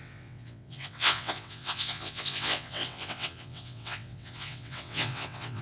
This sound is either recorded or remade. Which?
remade